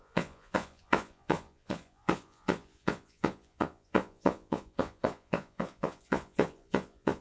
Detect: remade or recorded remade